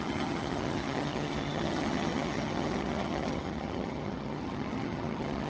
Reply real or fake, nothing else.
fake